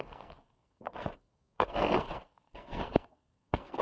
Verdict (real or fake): fake